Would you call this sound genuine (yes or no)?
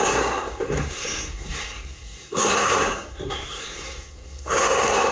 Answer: no